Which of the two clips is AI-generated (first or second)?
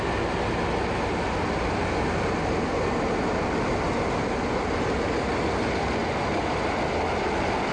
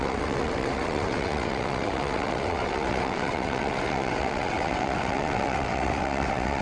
second